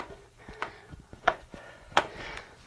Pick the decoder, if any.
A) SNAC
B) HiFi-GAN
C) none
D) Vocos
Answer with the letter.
D